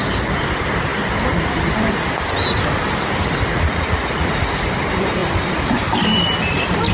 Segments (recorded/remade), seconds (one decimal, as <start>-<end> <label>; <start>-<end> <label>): 0.0-3.5 recorded; 3.5-4.3 remade; 4.3-6.9 recorded